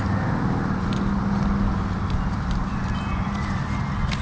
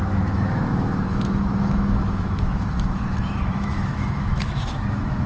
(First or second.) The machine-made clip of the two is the second